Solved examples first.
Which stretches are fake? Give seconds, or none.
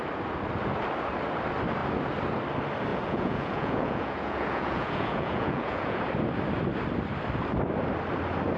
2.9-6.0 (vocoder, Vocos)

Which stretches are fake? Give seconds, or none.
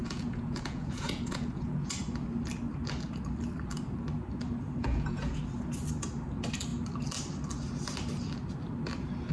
0.0-1.9 (vocoder, Vocos); 4.8-5.4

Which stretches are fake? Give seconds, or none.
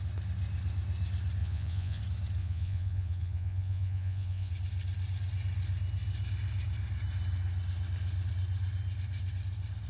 1.4-2.0 (vocoder, Vocos); 2.4-4.5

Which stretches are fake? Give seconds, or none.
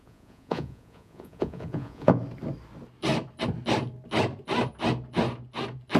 0.0-2.2 (vocoder, Vocos)